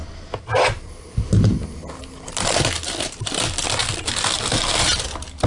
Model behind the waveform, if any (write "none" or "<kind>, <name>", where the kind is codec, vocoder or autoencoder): none